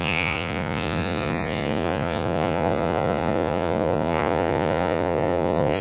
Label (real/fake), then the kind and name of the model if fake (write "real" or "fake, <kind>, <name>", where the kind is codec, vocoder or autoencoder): fake, vocoder, Vocos